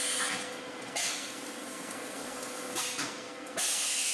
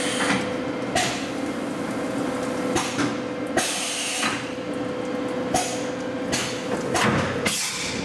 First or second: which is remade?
first